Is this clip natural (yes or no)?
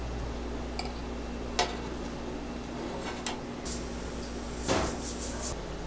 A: yes